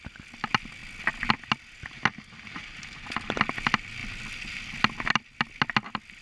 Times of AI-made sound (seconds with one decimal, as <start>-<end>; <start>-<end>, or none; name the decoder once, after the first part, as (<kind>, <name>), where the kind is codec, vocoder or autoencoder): none